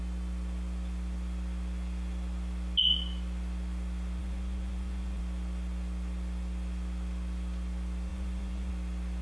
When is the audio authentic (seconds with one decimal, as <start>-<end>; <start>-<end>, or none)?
0.0-4.2; 5.2-8.1; 8.7-9.2